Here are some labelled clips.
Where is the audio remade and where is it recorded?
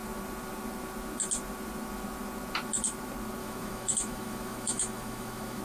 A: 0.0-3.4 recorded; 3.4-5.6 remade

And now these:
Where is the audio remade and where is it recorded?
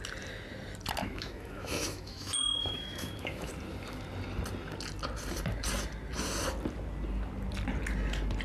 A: 0.0-1.0 recorded; 1.0-3.5 remade; 3.5-8.4 recorded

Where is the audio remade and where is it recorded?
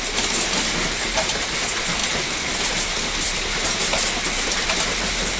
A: 0.0-5.4 recorded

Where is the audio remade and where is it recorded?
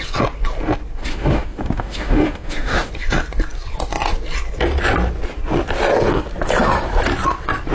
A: 0.0-1.0 recorded; 1.0-2.9 remade; 2.9-7.7 recorded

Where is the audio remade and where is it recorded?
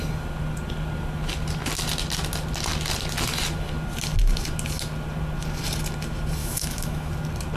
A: 0.0-6.4 recorded; 6.4-7.1 remade; 7.1-7.6 recorded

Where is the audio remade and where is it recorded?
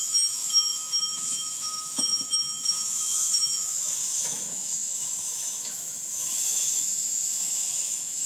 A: 0.0-8.3 remade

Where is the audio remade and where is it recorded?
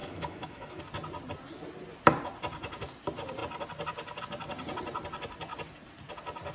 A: 0.0-0.8 remade; 0.8-6.5 recorded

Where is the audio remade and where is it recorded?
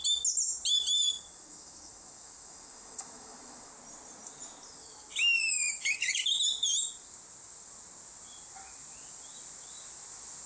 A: 0.0-1.0 recorded; 1.0-3.7 remade; 3.7-4.8 recorded; 4.8-6.2 remade; 6.2-10.5 recorded